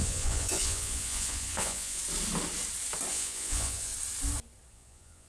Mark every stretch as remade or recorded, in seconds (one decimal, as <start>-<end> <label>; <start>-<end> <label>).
0.0-2.0 remade; 2.0-3.1 recorded; 3.1-3.9 remade; 3.9-4.7 recorded; 4.7-5.3 remade